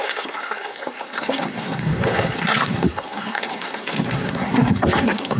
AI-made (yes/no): yes